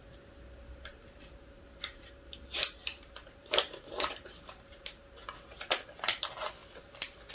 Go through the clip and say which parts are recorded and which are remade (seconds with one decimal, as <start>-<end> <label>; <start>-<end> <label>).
0.0-0.9 recorded; 0.9-1.6 remade; 1.6-2.8 recorded; 2.8-5.4 remade; 5.4-7.3 recorded